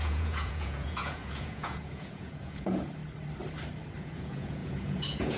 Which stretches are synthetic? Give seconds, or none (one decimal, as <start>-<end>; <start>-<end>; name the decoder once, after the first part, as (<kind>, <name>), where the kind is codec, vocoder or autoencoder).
0.0-3.0 (vocoder, Vocos); 4.0-5.4